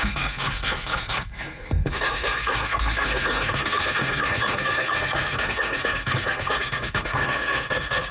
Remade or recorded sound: remade